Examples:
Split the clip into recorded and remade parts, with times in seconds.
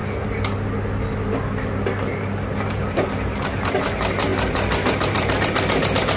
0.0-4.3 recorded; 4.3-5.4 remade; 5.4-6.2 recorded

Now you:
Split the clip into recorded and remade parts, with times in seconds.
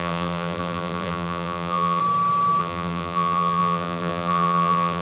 0.0-2.0 remade; 2.0-2.6 recorded; 2.6-5.0 remade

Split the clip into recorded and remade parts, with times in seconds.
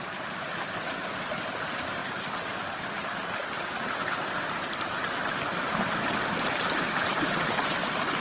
0.0-2.0 remade; 2.0-5.4 recorded; 5.4-8.2 remade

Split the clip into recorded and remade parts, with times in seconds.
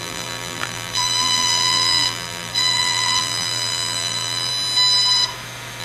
0.0-4.5 remade; 4.5-5.8 recorded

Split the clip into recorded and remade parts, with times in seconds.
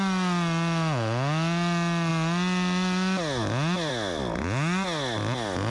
0.0-5.7 recorded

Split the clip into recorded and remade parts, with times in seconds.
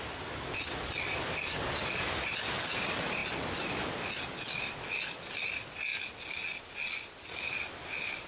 0.0-8.3 recorded